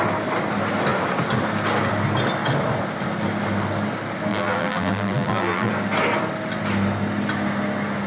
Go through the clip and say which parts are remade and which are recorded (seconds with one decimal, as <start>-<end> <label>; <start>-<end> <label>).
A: 0.0-4.3 recorded; 4.3-5.7 remade; 5.7-8.1 recorded